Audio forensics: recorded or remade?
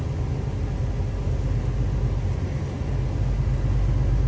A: recorded